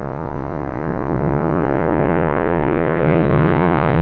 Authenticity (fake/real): fake